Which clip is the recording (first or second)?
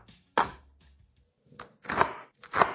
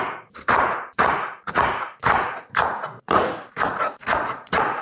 first